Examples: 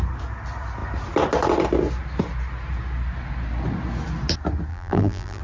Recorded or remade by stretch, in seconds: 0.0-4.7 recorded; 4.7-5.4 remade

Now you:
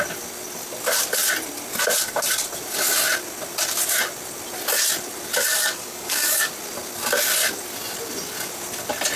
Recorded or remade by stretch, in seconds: 0.0-5.5 recorded; 5.5-6.5 remade; 6.5-9.2 recorded

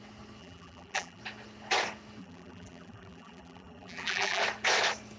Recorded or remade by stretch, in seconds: 0.0-0.4 recorded; 0.4-1.2 remade; 1.2-2.2 recorded; 2.2-4.4 remade; 4.4-5.2 recorded

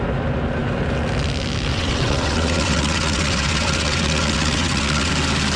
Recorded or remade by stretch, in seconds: 0.0-1.7 recorded; 1.7-5.1 remade; 5.1-5.6 recorded

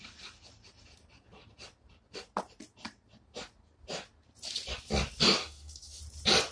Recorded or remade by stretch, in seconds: 0.0-5.4 recorded; 5.4-6.0 remade; 6.0-6.5 recorded